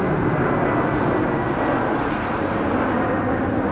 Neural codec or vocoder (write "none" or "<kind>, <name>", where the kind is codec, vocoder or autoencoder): none